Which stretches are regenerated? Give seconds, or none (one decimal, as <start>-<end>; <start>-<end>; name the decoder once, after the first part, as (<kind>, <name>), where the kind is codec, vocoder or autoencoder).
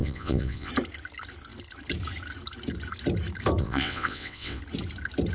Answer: 0.0-0.7 (vocoder, WaveNeXt); 3.6-4.6